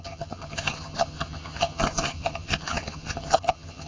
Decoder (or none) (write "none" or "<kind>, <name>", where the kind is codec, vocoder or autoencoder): vocoder, HiFi-GAN